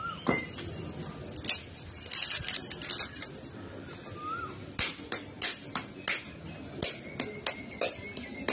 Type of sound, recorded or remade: recorded